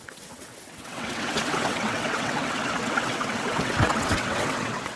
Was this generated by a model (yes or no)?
yes